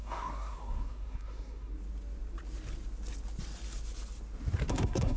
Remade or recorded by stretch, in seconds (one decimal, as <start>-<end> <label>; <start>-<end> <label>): 0.0-1.7 remade; 1.7-4.7 recorded; 4.7-5.2 remade